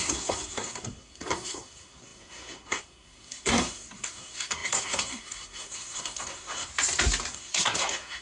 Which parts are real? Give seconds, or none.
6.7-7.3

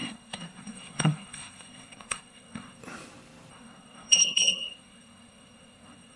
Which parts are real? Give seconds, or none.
2.8-3.5

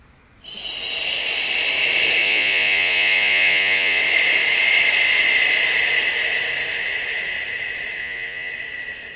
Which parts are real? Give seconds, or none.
0.0-2.2; 4.0-8.0; 8.5-9.2